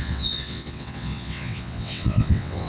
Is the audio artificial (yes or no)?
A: yes